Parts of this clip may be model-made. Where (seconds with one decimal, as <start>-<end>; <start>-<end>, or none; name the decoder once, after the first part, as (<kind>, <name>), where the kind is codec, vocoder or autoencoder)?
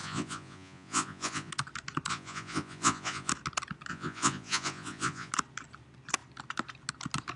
0.0-1.5 (vocoder, Vocos); 2.1-3.3; 3.9-5.3